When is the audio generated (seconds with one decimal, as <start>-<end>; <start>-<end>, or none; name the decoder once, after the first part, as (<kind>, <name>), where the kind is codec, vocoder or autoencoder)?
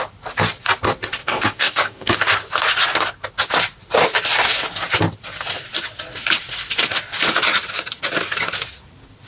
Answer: 1.2-2.1 (codec, DAC)